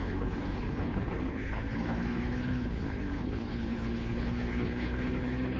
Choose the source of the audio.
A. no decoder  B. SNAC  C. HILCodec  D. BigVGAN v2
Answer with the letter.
C